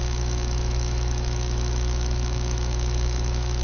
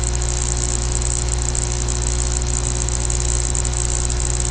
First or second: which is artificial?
first